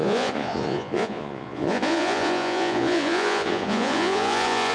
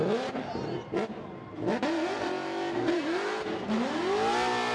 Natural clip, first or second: second